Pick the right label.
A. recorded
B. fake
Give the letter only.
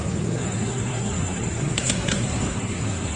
B